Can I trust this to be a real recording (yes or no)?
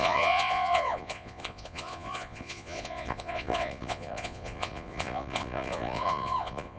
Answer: no